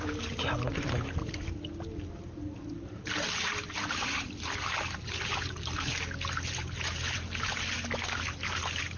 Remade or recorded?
recorded